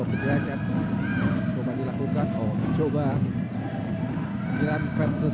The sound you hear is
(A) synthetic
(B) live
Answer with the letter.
B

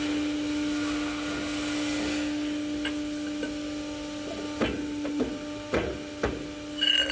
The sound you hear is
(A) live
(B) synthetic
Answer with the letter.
A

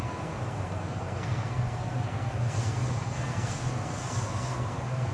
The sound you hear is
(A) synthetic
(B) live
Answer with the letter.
A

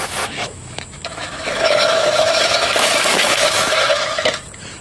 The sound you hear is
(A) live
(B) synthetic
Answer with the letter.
B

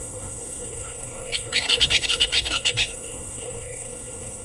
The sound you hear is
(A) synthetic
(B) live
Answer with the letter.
A